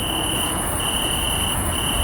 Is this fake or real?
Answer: fake